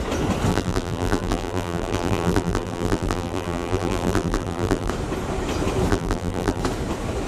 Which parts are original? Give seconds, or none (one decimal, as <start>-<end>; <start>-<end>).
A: 0.0-0.5; 4.9-5.9; 6.6-7.3